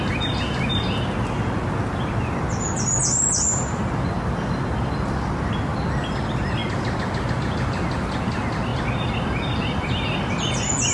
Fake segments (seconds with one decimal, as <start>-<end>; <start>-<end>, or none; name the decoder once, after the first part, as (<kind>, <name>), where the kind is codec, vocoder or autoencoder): none